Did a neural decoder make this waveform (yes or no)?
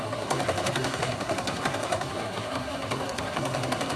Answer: yes